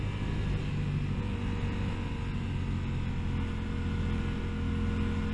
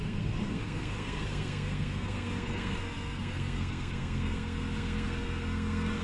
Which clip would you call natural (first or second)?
first